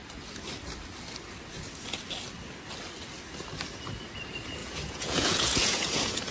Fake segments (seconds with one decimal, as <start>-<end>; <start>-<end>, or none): 4.6-6.3